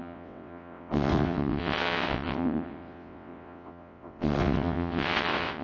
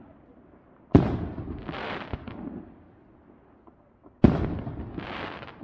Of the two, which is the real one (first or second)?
second